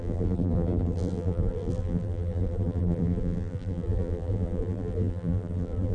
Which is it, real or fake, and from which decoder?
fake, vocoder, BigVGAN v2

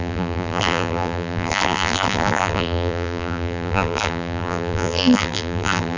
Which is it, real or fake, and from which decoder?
fake, vocoder, BigVGAN v2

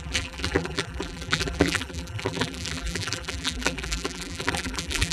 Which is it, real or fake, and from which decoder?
fake, vocoder, BigVGAN v2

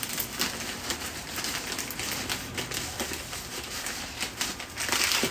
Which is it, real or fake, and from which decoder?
real